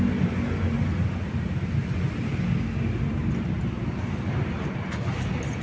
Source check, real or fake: real